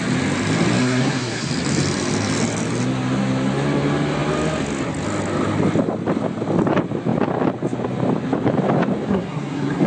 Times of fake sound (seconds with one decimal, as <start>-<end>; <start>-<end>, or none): 0.8-1.5; 9.1-9.9